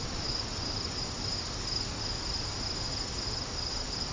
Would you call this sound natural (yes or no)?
yes